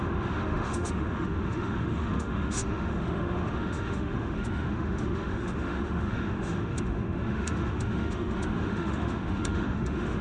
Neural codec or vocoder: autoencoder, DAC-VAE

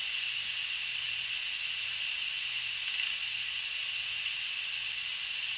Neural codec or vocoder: none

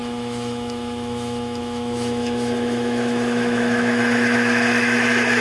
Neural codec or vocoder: autoencoder, DAC-VAE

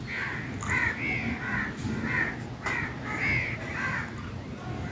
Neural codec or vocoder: none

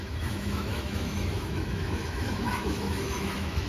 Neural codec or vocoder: autoencoder, DAC-VAE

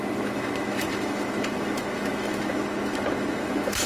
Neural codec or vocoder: autoencoder, DAC-VAE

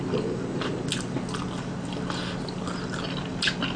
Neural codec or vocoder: none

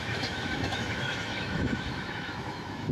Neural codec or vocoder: autoencoder, DAC-VAE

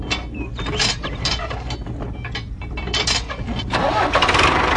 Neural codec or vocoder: none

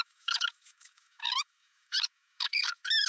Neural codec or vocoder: autoencoder, DAC-VAE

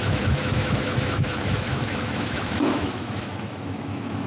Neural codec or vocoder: autoencoder, DAC-VAE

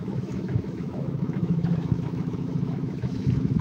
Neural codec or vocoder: autoencoder, DAC-VAE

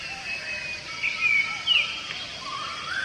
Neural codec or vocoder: none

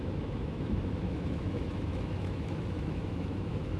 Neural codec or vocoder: autoencoder, DAC-VAE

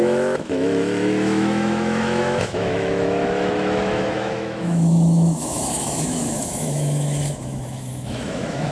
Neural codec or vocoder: autoencoder, DAC-VAE